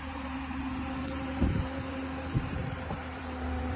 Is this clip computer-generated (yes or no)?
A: yes